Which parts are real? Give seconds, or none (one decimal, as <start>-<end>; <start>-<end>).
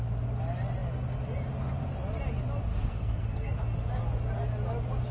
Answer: 0.0-2.7; 3.6-5.1